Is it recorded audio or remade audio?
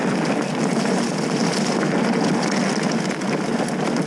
recorded